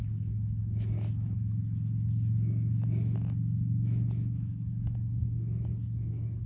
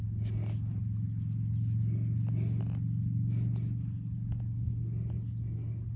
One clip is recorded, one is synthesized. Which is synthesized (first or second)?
first